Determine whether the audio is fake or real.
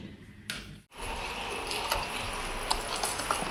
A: real